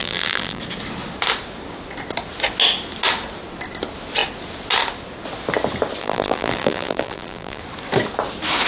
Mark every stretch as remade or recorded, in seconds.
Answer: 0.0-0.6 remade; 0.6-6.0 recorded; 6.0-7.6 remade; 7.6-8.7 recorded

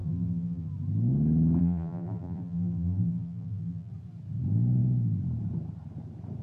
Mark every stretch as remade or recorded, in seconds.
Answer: 0.0-0.7 remade; 0.7-1.6 recorded; 1.6-3.9 remade; 3.9-6.4 recorded

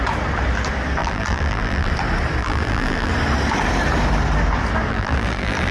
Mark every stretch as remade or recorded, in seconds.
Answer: 0.0-1.0 recorded; 1.0-1.9 remade; 1.9-2.4 recorded; 2.4-3.1 remade; 3.1-4.9 recorded; 4.9-5.7 remade

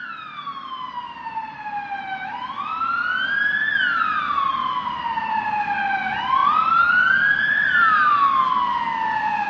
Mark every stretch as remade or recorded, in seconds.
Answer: 0.0-1.4 recorded; 1.4-2.0 remade; 2.0-6.4 recorded; 6.4-8.4 remade; 8.4-9.5 recorded

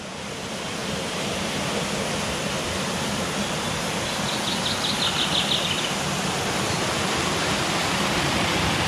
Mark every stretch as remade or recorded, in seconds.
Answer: 0.0-0.8 recorded; 0.8-2.0 remade; 2.0-8.9 recorded

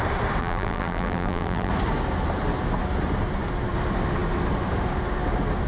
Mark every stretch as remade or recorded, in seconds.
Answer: 0.0-0.4 recorded; 0.4-1.7 remade; 1.7-5.7 recorded

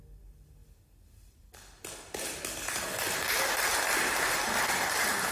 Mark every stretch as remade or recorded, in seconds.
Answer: 0.0-5.3 recorded

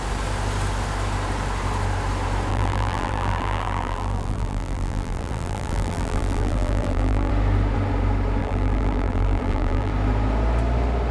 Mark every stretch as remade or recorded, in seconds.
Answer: 0.0-2.5 recorded; 2.5-7.3 remade; 7.3-8.4 recorded; 8.4-9.9 remade; 9.9-11.1 recorded